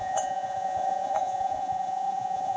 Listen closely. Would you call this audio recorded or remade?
remade